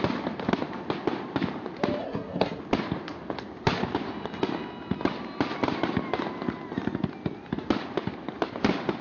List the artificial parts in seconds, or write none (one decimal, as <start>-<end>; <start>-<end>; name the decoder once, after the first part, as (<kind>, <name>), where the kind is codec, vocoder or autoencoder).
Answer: 2.0-2.6 (codec, SNAC)